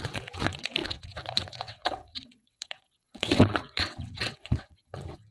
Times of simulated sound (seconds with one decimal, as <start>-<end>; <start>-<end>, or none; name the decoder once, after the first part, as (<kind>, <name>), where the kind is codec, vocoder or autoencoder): 0.0-5.3 (vocoder, WaveNeXt)